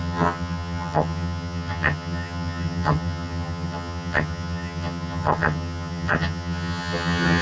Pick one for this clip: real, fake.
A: fake